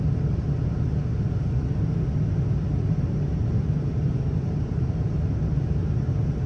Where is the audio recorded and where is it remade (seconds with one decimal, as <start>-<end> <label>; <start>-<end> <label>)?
0.0-2.7 recorded; 2.7-5.1 remade; 5.1-5.5 recorded; 5.5-6.1 remade; 6.1-6.5 recorded

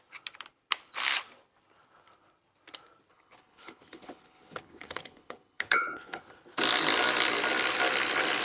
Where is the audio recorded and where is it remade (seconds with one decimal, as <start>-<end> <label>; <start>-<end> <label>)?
0.0-3.1 recorded; 3.1-6.2 remade; 6.2-8.4 recorded

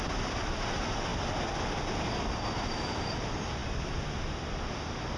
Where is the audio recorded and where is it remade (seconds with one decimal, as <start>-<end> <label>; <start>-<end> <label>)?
0.0-5.2 recorded

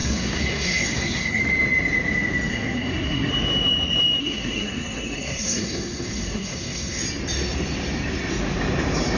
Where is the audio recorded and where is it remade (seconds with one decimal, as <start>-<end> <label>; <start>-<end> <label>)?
0.0-1.4 remade; 1.4-2.5 recorded; 2.5-3.3 remade; 3.3-4.2 recorded; 4.2-7.0 remade; 7.0-9.2 recorded

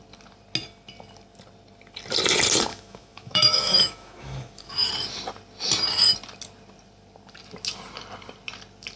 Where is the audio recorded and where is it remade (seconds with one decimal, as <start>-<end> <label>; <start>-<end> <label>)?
0.0-2.7 recorded; 2.7-4.9 remade; 4.9-9.0 recorded

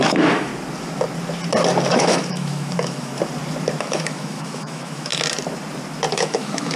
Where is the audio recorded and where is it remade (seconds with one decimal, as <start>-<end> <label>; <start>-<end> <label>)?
0.0-0.5 remade; 0.5-1.9 recorded; 1.9-3.1 remade; 3.1-3.8 recorded; 3.8-5.1 remade; 5.1-6.1 recorded; 6.1-6.8 remade

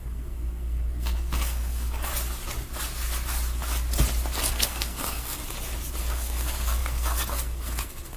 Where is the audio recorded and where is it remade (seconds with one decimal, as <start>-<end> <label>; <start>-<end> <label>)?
0.0-2.1 remade; 2.1-4.5 recorded; 4.5-5.4 remade; 5.4-6.0 recorded; 6.0-8.2 remade